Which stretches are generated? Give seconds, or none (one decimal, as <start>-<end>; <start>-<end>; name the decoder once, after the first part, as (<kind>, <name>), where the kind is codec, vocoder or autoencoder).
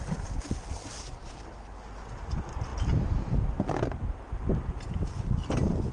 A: none